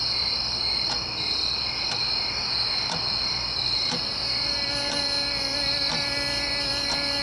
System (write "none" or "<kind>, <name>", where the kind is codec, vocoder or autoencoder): none